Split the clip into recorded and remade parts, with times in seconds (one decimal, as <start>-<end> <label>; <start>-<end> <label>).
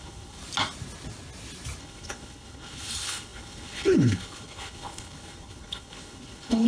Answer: 0.0-0.4 remade; 0.4-1.8 recorded; 1.8-6.7 remade